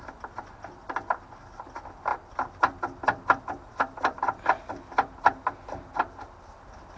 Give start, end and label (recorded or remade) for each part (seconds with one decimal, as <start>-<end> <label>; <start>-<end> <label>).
0.0-7.0 recorded